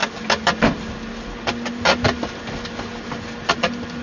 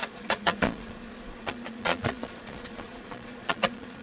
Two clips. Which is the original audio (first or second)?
first